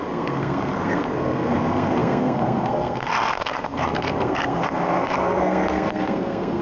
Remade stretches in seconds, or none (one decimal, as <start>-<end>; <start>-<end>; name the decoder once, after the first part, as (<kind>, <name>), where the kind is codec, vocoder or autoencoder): 0.0-6.6 (codec, SNAC)

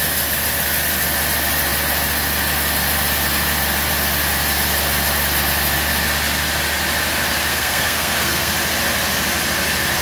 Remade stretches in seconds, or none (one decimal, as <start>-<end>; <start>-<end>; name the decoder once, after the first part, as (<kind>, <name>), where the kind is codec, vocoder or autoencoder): 7.5-8.5 (codec, SNAC)

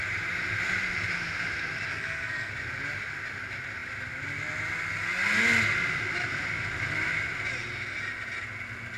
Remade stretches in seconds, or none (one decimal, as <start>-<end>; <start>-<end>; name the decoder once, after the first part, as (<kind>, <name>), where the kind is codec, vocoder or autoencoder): 1.9-2.5 (codec, SNAC)

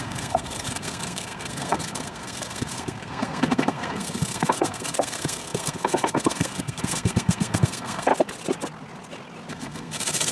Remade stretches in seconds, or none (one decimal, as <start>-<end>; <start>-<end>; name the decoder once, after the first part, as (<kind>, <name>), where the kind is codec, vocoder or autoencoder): 0.0-8.1 (codec, SNAC); 9.5-10.3

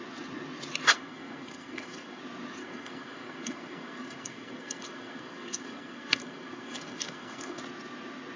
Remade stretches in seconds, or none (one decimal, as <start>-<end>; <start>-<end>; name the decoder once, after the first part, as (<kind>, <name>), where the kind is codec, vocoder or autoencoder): 0.9-2.2 (codec, SNAC); 2.6-7.6

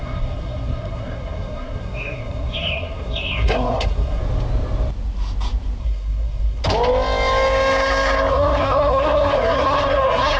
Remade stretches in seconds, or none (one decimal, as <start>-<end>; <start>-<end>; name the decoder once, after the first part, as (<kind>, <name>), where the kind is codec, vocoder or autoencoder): 0.0-4.2 (codec, SNAC); 5.8-6.6; 8.3-10.4